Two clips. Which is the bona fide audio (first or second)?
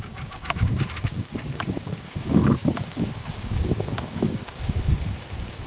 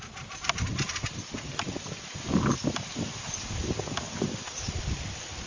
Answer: second